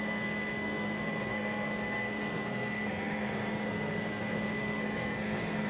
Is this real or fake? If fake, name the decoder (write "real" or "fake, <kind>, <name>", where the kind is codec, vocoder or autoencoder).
fake, codec, SNAC